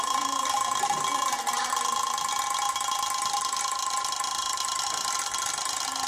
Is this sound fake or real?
real